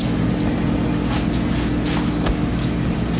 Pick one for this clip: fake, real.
real